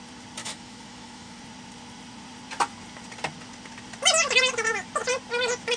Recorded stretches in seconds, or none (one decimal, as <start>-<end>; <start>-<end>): 0.0-0.4; 1.4-5.8